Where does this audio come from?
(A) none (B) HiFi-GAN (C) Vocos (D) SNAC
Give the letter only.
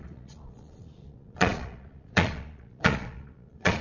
C